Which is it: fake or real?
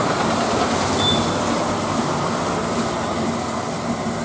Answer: real